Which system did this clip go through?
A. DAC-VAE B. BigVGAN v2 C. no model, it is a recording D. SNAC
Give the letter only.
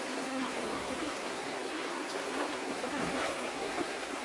D